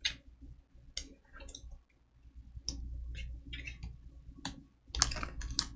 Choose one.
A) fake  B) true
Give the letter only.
B